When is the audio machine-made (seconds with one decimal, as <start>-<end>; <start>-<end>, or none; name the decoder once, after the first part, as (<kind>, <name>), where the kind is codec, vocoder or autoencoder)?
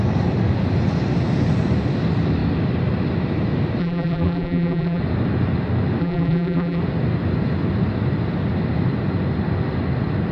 3.8-5.0 (vocoder, BigVGAN v2); 6.0-6.8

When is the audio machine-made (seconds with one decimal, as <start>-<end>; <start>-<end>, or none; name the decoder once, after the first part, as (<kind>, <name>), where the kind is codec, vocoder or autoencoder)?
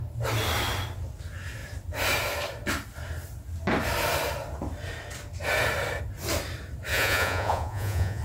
6.9-8.2 (vocoder, Vocos)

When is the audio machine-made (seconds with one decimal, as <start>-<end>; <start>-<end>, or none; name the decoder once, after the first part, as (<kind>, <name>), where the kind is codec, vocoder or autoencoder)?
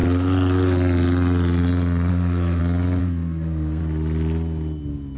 2.1-2.6 (codec, SNAC); 3.0-3.8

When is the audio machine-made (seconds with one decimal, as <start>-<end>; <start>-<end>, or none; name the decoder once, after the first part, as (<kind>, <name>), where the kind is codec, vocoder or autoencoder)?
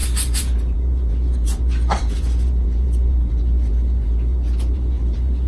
0.0-5.5 (vocoder, BigVGAN v2)